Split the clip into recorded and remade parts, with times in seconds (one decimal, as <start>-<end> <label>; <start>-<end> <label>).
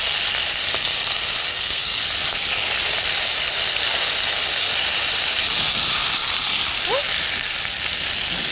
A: 0.0-1.5 recorded; 1.5-2.0 remade; 2.0-8.5 recorded